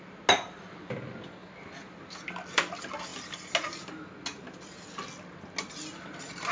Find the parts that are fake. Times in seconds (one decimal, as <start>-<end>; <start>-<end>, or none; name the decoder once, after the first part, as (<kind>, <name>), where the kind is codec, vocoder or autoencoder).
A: none